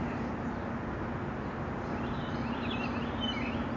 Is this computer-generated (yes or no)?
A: no